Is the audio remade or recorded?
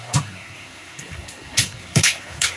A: remade